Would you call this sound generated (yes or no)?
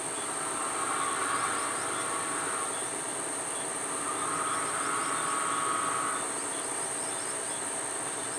no